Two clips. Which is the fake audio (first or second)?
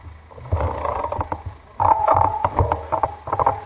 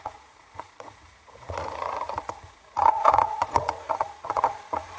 second